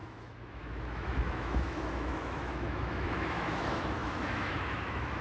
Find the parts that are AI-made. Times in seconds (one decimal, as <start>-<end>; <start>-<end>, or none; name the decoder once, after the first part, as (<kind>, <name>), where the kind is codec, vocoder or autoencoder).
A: 0.0-5.2 (autoencoder, DAC-VAE)